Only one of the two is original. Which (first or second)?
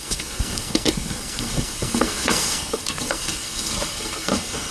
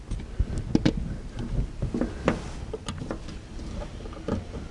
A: second